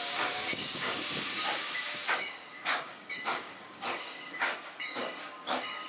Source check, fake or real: fake